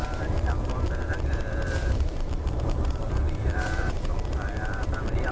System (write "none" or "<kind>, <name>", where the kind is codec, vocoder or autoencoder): vocoder, BigVGAN v2